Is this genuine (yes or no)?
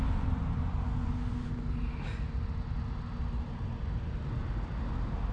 yes